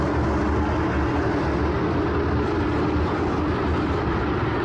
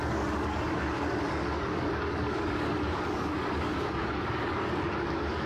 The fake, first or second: second